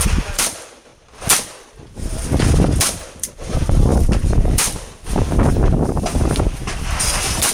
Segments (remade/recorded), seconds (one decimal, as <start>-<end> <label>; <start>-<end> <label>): 0.0-0.9 remade; 0.9-1.9 recorded; 1.9-7.5 remade

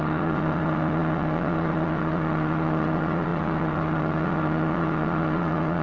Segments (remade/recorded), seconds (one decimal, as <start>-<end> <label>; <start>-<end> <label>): 0.0-5.8 remade

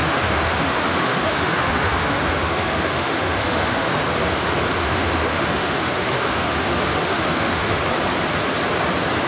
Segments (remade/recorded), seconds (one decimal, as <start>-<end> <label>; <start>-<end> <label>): 0.0-4.0 remade; 4.0-4.8 recorded; 4.8-7.8 remade; 7.8-9.3 recorded

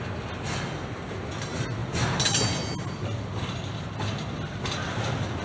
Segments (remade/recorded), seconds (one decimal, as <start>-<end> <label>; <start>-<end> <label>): 0.0-5.4 recorded

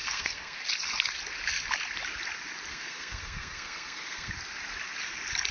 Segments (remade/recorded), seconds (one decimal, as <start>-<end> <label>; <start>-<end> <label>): 0.0-0.6 remade; 0.6-2.7 recorded; 2.7-4.3 remade; 4.3-5.5 recorded